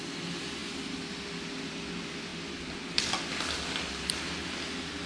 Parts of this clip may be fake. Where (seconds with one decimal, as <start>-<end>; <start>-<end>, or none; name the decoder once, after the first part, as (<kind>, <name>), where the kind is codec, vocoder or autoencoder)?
none